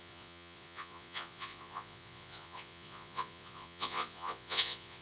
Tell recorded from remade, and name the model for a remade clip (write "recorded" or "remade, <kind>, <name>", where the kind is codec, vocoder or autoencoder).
remade, vocoder, Vocos